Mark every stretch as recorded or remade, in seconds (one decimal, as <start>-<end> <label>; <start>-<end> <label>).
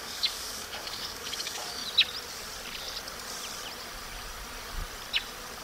0.0-1.8 remade; 1.8-5.6 recorded